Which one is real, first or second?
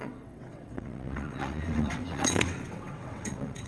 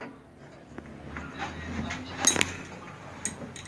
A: second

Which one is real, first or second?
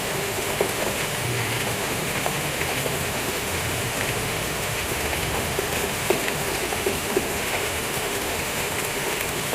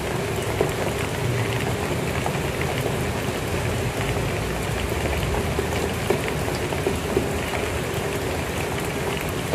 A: second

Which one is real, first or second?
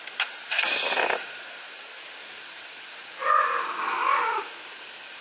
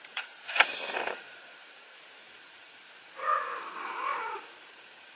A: first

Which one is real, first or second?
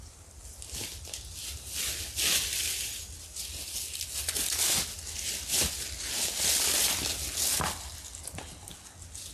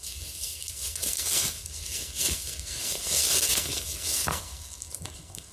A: first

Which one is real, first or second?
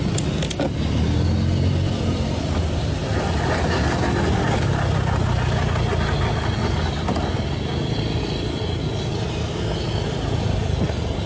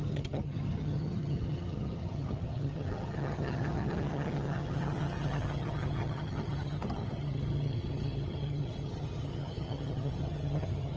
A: first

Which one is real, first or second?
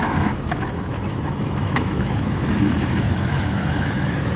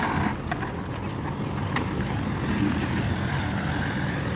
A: second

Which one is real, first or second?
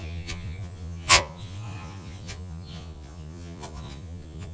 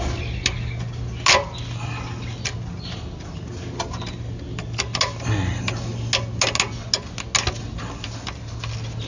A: second